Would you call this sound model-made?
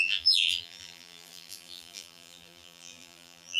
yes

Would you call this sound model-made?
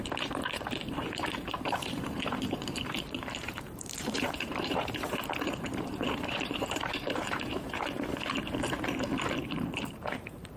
yes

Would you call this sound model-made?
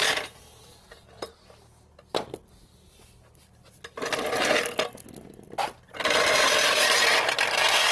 no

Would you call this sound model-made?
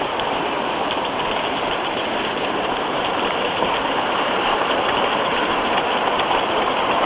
yes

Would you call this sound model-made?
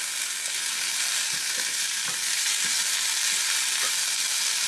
no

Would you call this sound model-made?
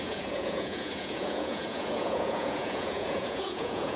yes